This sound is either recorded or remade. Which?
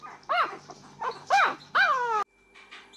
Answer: recorded